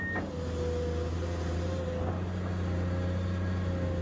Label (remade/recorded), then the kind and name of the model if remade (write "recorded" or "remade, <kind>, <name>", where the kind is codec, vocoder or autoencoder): recorded